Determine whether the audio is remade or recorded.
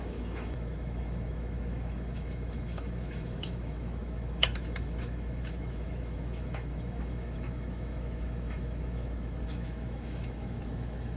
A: remade